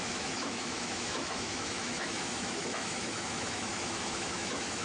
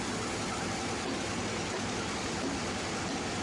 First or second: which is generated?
first